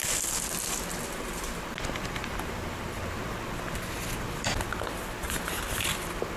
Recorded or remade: recorded